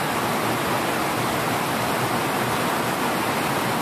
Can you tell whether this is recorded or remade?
recorded